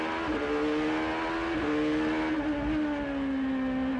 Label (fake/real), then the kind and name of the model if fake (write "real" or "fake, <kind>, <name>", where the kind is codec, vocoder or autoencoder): real